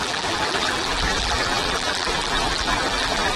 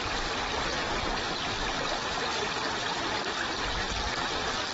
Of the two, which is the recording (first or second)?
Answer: second